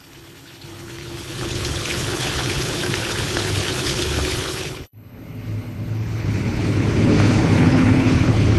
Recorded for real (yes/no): no